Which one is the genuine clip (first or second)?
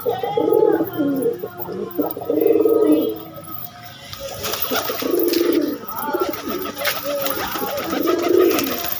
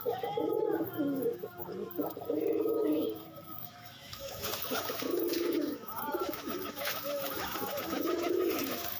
first